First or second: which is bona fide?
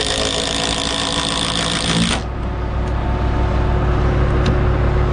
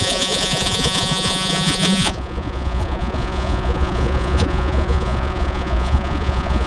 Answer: first